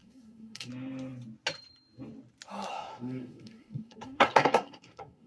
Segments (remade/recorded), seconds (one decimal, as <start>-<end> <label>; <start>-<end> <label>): 0.0-0.7 remade; 0.7-2.7 recorded; 2.7-5.3 remade